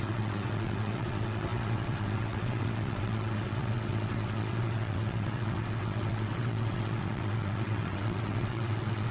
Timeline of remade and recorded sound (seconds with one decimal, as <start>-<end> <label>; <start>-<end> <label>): 0.0-9.1 remade